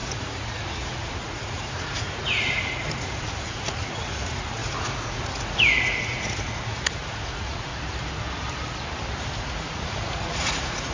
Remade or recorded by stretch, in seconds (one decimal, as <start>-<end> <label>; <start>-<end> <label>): 0.0-7.7 remade; 7.7-9.2 recorded; 9.2-10.9 remade